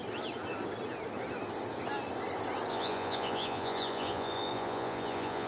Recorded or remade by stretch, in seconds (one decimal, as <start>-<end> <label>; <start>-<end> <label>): 0.0-2.7 recorded; 2.7-5.5 remade